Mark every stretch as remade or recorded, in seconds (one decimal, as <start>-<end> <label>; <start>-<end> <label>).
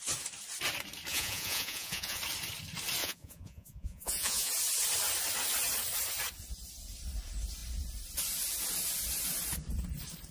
0.0-1.1 recorded; 1.1-2.2 remade; 2.2-3.0 recorded; 3.0-4.5 remade; 4.5-10.3 recorded